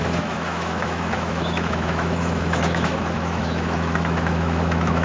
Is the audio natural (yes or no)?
no